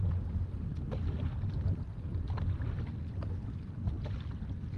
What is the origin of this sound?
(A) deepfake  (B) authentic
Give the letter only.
B